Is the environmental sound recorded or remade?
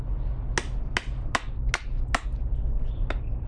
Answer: recorded